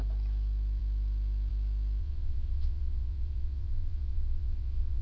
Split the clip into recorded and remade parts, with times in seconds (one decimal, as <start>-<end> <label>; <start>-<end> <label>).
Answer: 0.0-2.0 recorded; 2.0-5.0 remade

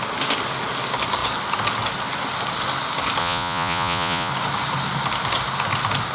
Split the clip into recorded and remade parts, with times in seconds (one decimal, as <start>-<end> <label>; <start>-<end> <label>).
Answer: 0.0-3.2 recorded; 3.2-4.3 remade; 4.3-6.1 recorded

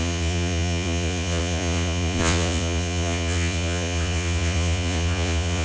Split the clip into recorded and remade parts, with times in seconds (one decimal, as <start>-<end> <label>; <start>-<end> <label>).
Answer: 0.0-5.6 remade

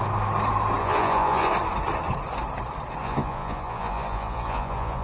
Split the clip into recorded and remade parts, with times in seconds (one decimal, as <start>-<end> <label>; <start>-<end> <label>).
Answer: 0.0-0.8 recorded; 0.8-1.5 remade; 1.5-3.0 recorded; 3.0-5.0 remade

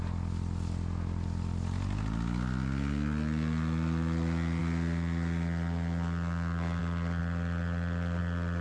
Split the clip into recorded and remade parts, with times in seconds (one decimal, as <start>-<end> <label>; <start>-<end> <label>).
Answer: 0.0-8.6 recorded

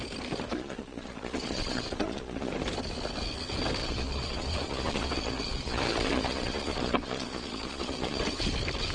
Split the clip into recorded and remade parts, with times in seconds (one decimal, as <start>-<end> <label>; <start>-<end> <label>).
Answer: 0.0-0.5 recorded; 0.5-2.5 remade; 2.5-3.8 recorded; 3.8-8.2 remade; 8.2-8.9 recorded